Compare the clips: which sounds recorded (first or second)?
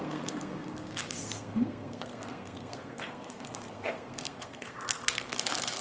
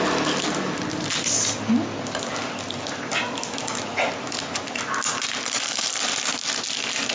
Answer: second